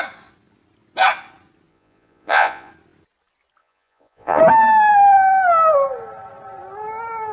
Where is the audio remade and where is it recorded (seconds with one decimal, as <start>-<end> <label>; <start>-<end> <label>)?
0.0-1.7 recorded; 1.7-2.7 remade; 2.7-3.6 recorded; 3.6-4.4 remade; 4.4-7.3 recorded